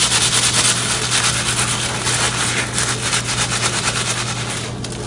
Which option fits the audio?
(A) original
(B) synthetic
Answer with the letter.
A